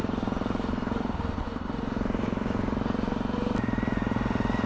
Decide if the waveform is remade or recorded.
recorded